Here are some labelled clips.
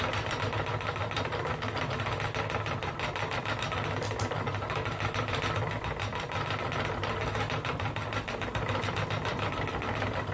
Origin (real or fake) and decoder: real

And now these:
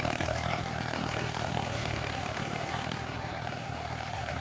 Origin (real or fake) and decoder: fake, codec, SNAC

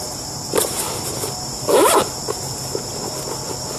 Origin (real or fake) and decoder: real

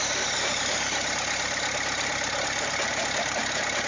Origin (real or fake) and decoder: real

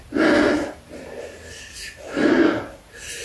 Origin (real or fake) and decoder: real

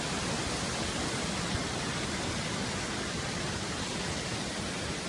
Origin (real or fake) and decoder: real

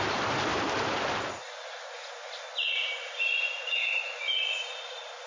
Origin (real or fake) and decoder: real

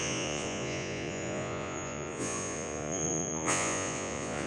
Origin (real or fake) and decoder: fake, vocoder, Vocos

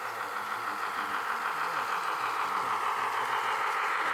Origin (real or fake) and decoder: real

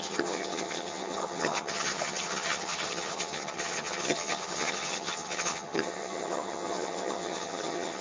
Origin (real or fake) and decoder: fake, vocoder, HiFi-GAN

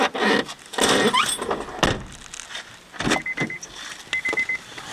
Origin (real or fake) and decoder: real